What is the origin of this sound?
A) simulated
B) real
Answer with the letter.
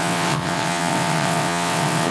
A